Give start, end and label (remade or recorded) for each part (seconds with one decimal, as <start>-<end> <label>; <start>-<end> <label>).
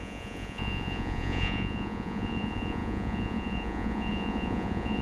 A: 0.0-5.0 remade